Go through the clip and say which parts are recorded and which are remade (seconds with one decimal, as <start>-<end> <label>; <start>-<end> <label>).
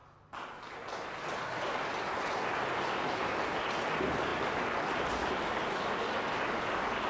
0.0-7.1 recorded